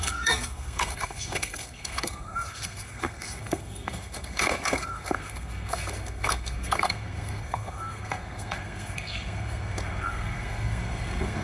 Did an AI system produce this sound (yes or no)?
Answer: yes